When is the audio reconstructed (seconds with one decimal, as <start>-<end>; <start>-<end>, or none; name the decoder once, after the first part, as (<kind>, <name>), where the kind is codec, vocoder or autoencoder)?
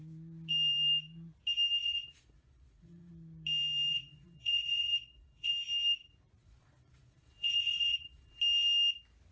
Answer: 1.8-3.1 (vocoder, Vocos); 3.9-5.5; 6.4-8.4